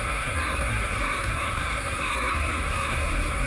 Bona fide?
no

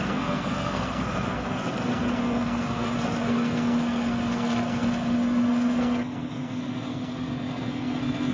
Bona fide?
no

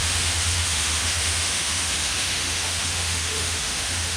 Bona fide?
no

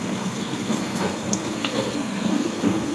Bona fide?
no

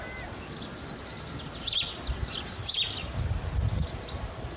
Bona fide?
yes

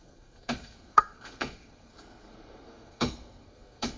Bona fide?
no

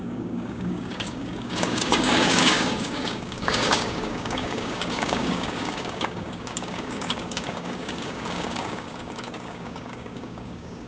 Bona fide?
no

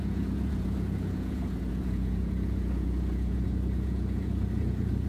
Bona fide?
no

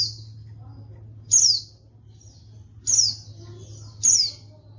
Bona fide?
yes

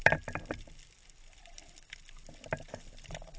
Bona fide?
yes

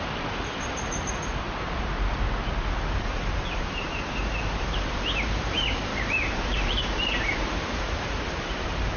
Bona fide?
no